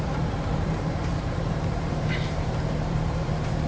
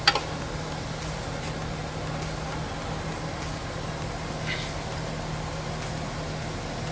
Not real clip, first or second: first